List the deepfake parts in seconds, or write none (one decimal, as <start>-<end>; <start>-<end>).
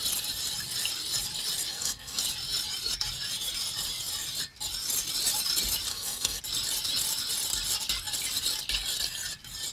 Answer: 1.7-2.2; 5.9-6.4